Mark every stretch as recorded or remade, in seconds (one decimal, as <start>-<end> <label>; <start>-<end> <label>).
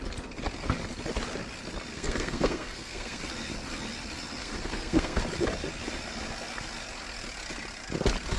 0.0-1.9 recorded; 1.9-3.2 remade; 3.2-4.4 recorded; 4.4-5.2 remade; 5.2-8.4 recorded